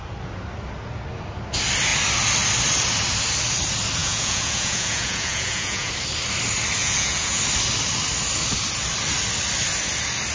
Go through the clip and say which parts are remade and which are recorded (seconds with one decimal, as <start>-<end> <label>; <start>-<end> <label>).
0.0-4.0 recorded; 4.0-5.9 remade; 5.9-6.8 recorded; 6.8-7.4 remade; 7.4-10.3 recorded